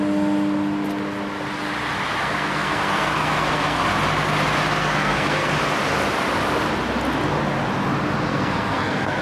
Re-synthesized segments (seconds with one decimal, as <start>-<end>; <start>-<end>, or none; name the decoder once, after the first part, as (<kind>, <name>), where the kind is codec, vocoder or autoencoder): 2.2-3.8 (codec, SNAC); 4.8-5.5; 8.3-9.2